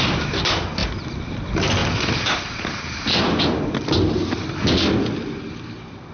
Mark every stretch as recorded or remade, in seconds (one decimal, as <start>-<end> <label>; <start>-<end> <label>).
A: 0.0-0.8 recorded; 0.8-1.4 remade; 1.4-6.1 recorded